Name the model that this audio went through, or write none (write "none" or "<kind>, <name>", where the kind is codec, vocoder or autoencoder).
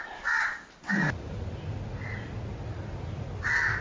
none